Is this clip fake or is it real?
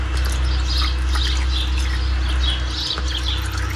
real